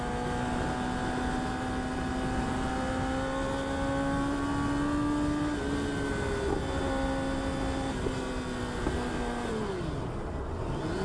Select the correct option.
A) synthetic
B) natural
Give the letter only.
B